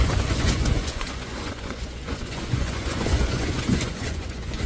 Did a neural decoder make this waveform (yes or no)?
yes